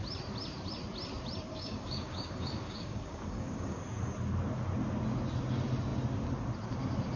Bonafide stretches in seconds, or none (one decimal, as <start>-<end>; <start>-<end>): 0.0-1.5; 3.8-7.2